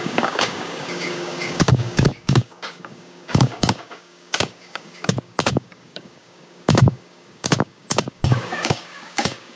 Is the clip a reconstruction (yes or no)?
yes